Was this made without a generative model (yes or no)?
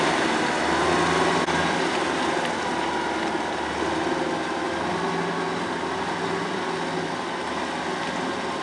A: yes